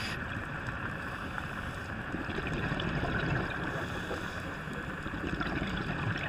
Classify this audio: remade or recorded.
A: remade